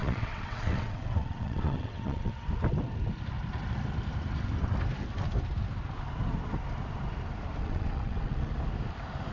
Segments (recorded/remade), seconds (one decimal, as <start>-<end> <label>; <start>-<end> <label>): 0.0-2.5 remade; 2.5-7.6 recorded; 7.6-8.5 remade; 8.5-9.3 recorded